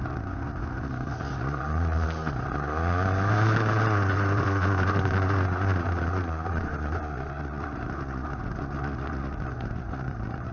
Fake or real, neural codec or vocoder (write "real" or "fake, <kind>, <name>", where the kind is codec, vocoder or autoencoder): fake, vocoder, Vocos